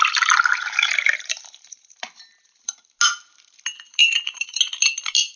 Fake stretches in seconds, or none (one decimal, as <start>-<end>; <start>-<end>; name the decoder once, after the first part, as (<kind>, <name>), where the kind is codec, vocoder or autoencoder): 0.5-2.7 (vocoder, BigVGAN v2); 4.0-4.6